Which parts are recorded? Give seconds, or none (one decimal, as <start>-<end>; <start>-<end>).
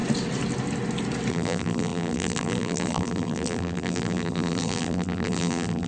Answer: 0.0-1.3